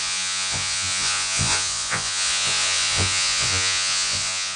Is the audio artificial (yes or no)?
yes